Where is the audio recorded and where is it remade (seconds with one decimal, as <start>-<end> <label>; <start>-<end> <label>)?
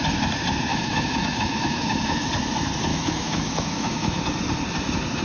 0.0-0.7 recorded; 0.7-2.3 remade; 2.3-2.9 recorded; 2.9-4.2 remade; 4.2-5.2 recorded